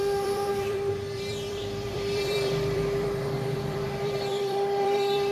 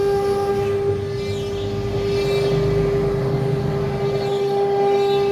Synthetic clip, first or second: first